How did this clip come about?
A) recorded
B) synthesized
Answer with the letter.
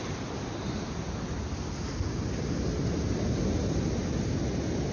A